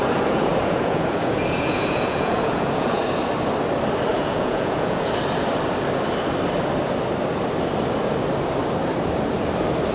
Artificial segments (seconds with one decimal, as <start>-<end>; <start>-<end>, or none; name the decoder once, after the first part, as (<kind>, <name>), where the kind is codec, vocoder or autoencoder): 0.0-3.0 (vocoder, Vocos); 4.1-5.1